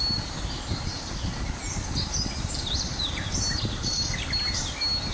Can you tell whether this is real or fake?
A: real